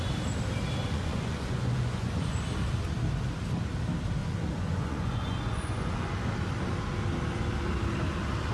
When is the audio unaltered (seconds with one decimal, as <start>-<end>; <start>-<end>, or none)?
0.0-0.8; 2.4-4.2; 6.2-8.5